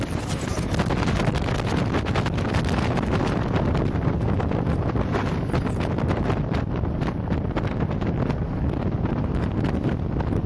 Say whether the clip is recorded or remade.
recorded